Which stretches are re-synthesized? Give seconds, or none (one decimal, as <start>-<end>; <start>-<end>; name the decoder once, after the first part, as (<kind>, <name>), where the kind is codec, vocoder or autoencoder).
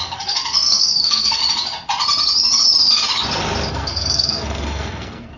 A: 0.0-1.4 (codec, SNAC); 3.7-5.4